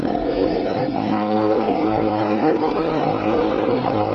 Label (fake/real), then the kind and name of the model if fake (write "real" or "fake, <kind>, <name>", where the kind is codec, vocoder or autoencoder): fake, codec, SNAC